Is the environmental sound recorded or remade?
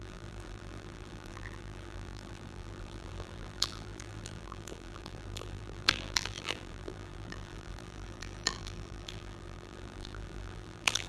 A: remade